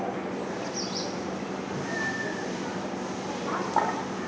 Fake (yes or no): no